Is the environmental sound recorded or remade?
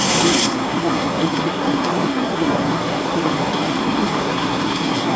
remade